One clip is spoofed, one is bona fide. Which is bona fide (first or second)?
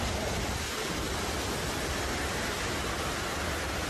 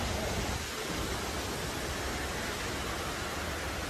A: second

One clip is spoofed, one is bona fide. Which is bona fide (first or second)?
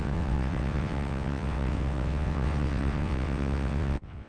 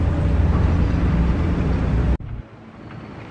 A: second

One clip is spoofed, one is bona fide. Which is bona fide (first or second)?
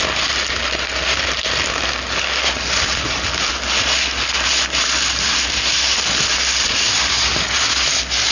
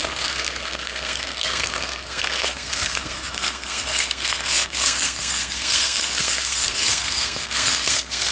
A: first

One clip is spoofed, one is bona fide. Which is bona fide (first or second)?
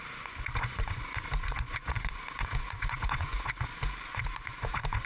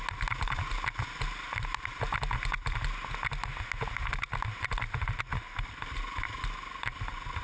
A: second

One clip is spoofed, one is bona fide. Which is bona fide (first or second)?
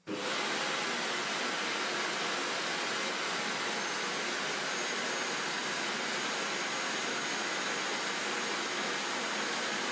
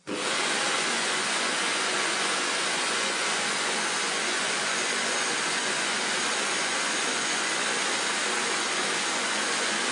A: first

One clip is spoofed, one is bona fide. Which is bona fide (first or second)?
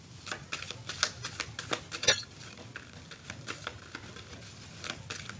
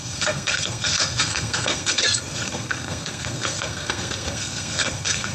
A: first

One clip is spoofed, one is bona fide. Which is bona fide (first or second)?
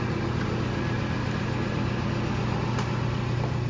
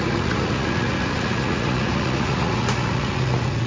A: first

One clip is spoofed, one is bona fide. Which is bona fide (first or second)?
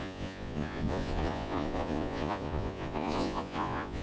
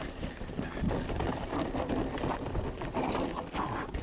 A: second